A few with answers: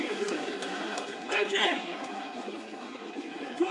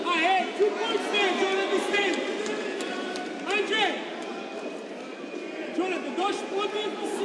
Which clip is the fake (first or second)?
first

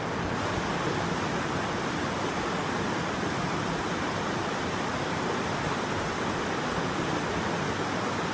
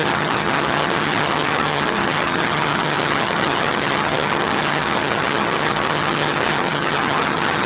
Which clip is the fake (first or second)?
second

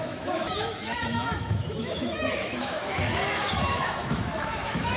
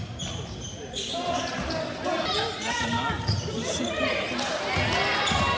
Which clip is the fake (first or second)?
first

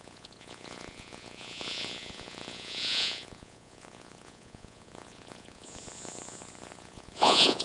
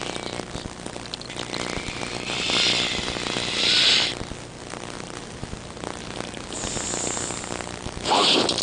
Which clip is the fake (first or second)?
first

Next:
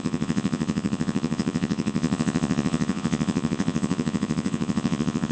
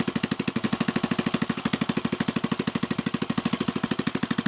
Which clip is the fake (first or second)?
first